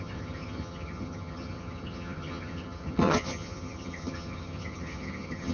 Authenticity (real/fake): fake